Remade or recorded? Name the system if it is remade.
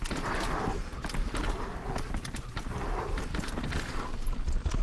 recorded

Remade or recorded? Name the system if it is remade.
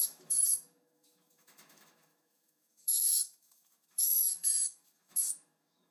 remade, autoencoder, DAC-VAE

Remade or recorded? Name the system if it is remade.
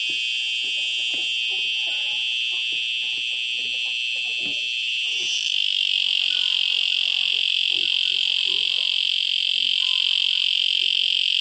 recorded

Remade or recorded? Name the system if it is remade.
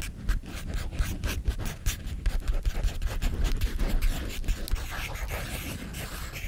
recorded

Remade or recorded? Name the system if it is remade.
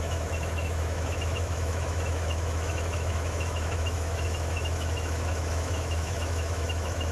remade, autoencoder, DAC-VAE